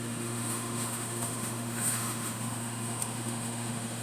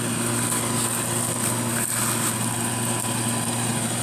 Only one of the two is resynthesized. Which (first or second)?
first